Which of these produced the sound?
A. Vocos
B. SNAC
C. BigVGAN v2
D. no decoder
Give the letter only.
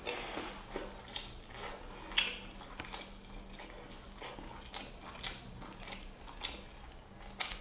D